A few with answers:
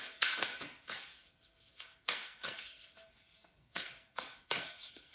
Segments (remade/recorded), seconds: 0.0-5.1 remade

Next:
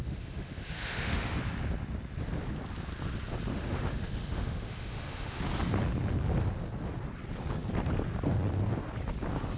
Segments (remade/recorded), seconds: 0.0-1.4 remade; 1.4-3.5 recorded; 3.5-5.4 remade; 5.4-9.6 recorded

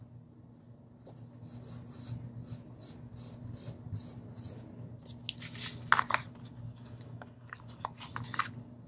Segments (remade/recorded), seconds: 0.0-6.7 recorded; 6.7-8.0 remade; 8.0-8.9 recorded